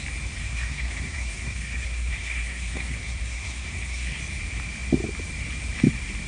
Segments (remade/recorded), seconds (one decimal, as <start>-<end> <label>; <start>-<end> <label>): 0.0-0.4 recorded; 0.4-4.2 remade; 4.2-6.3 recorded